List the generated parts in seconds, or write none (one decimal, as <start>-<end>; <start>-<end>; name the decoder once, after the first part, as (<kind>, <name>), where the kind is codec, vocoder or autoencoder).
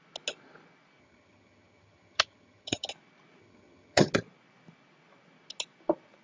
1.0-2.9 (vocoder, HiFi-GAN); 3.4-4.1